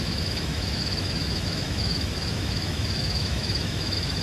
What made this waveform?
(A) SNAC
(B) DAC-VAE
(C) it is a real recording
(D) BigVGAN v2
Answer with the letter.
B